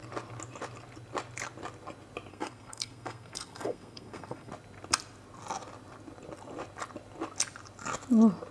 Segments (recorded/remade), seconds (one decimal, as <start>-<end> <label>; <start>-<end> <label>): 0.0-2.3 recorded; 2.3-4.5 remade; 4.5-8.5 recorded